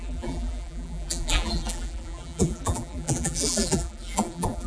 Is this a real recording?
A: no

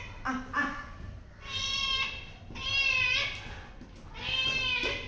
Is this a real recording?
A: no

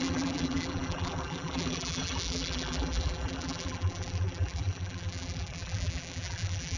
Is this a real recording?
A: no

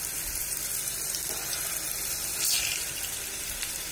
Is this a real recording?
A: no